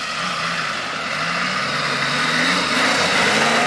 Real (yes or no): yes